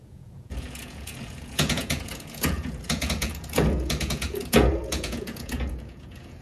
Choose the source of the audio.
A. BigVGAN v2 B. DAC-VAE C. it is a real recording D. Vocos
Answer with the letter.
D